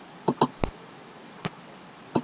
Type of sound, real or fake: real